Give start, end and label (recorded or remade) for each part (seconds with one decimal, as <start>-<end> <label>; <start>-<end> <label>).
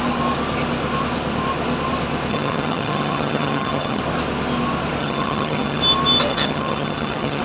0.0-2.3 recorded; 2.3-4.0 remade; 4.0-5.0 recorded; 5.0-5.8 remade; 5.8-6.3 recorded; 6.3-7.4 remade